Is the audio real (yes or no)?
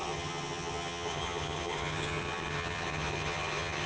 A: no